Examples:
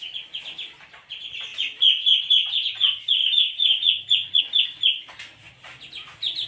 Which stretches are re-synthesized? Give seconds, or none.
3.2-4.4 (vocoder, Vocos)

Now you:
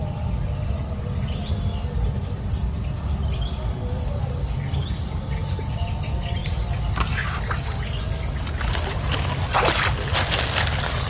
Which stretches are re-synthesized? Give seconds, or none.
none

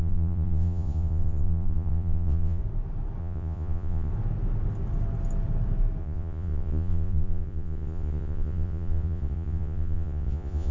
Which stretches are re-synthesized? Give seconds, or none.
0.0-2.6 (vocoder, Vocos); 3.2-4.1; 6.0-10.7

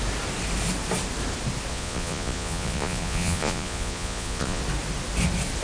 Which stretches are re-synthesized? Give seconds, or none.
1.7-4.6 (vocoder, Vocos)

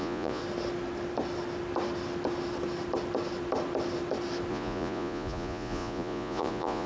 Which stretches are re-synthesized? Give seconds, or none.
0.0-0.4 (vocoder, Vocos); 4.5-6.9

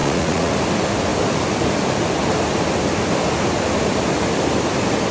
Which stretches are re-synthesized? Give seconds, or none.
0.0-0.5 (vocoder, Vocos)